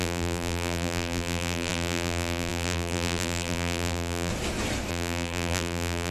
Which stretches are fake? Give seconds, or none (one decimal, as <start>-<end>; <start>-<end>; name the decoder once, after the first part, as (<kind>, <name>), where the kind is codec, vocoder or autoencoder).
0.0-4.3 (vocoder, BigVGAN v2); 4.9-6.1